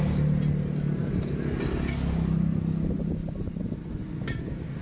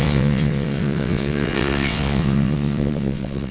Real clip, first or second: first